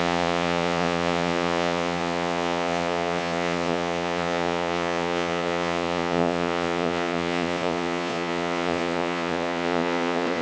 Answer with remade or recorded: remade